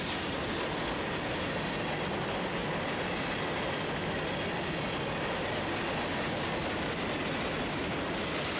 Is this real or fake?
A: real